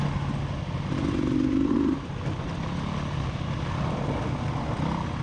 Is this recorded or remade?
recorded